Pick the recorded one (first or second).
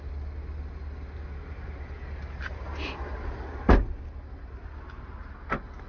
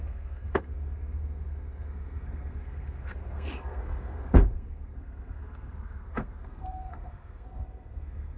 first